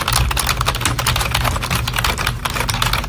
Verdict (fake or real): real